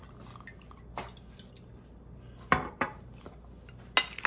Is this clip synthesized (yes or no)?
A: no